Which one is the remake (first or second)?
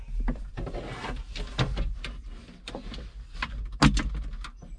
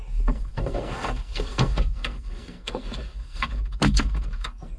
second